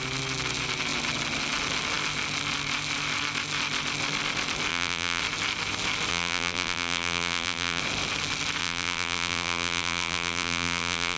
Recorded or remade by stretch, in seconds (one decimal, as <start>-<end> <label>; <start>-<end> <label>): 0.0-4.7 recorded; 4.7-5.2 remade; 5.2-6.1 recorded; 6.1-7.8 remade; 7.8-8.6 recorded; 8.6-11.2 remade

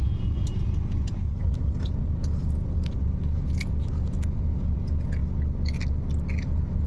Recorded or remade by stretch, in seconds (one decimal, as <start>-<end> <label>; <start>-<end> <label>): 0.0-5.2 remade; 5.2-6.4 recorded; 6.4-6.9 remade

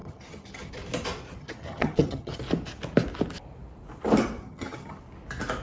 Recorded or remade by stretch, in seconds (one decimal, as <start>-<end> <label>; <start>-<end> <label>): 0.0-0.7 remade; 0.7-1.4 recorded; 1.4-2.4 remade; 2.4-4.4 recorded; 4.4-5.0 remade; 5.0-5.6 recorded

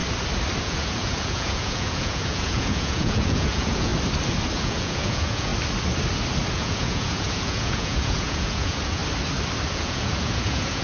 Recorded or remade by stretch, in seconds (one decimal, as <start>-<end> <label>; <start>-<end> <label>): 0.0-0.6 recorded; 0.6-3.9 remade; 3.9-4.5 recorded; 4.5-5.5 remade; 5.5-6.5 recorded; 6.5-9.0 remade; 9.0-9.7 recorded; 9.7-10.8 remade

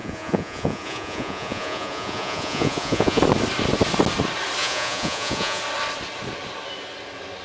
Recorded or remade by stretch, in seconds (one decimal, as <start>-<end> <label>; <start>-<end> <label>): 0.0-3.2 remade; 3.2-4.6 recorded; 4.6-5.6 remade; 5.6-7.4 recorded

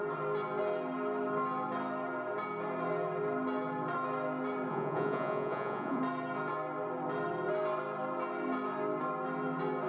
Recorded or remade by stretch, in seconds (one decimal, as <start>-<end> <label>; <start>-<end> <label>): 0.0-4.7 recorded; 4.7-6.0 remade; 6.0-9.9 recorded